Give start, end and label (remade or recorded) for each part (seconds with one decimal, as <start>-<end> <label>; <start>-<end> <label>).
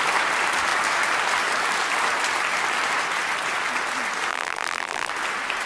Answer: 0.0-4.3 recorded; 4.3-5.1 remade; 5.1-5.7 recorded